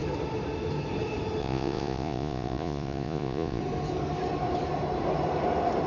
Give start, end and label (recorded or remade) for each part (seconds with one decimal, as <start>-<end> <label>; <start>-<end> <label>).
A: 0.0-1.4 recorded; 1.4-3.6 remade; 3.6-5.9 recorded